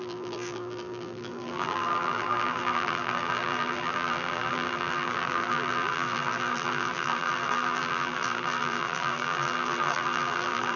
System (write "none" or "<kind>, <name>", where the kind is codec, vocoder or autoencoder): vocoder, BigVGAN v2